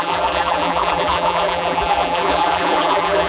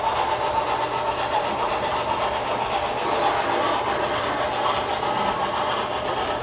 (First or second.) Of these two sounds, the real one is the second